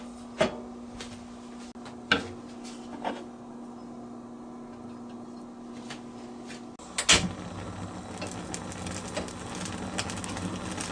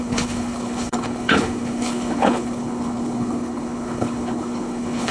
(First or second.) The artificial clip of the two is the second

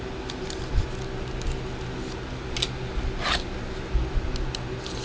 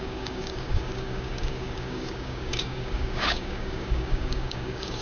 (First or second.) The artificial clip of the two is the second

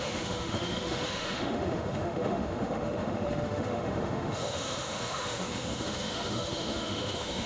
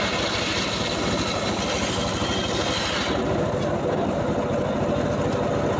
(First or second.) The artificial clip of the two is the first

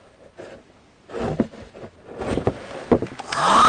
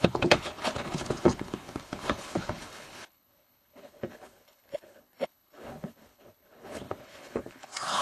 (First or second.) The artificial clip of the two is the second